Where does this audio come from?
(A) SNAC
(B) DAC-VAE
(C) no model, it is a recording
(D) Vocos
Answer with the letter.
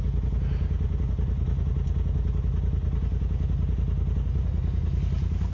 C